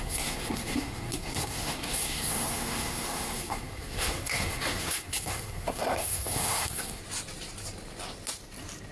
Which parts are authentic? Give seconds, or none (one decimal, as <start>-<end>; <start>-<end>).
7.0-8.9